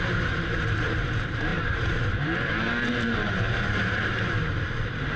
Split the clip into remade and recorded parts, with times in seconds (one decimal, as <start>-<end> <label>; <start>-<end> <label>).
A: 0.0-5.2 remade